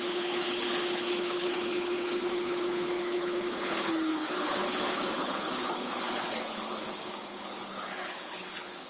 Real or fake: fake